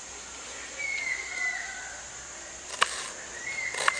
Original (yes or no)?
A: yes